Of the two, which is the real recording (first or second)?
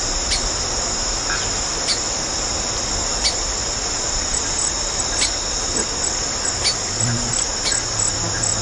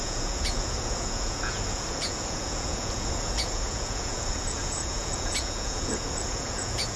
first